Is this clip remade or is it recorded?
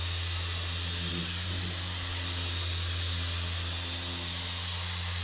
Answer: recorded